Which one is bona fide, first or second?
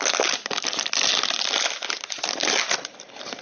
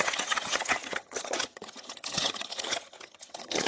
first